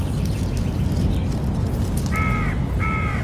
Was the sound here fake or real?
real